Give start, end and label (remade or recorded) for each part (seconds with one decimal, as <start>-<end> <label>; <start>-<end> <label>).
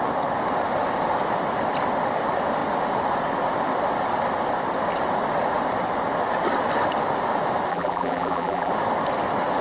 0.0-7.7 recorded; 7.7-8.7 remade; 8.7-9.6 recorded